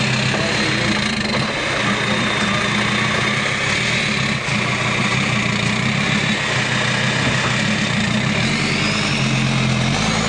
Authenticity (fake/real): real